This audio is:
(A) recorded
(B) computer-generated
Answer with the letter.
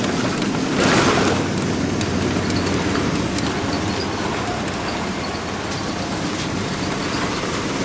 A